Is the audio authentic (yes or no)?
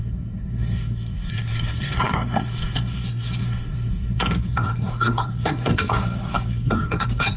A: no